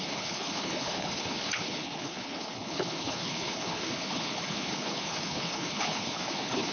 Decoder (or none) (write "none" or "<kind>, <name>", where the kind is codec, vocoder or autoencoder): codec, HILCodec